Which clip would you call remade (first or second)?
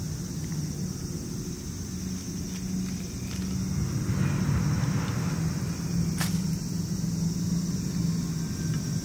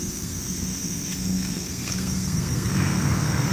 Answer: second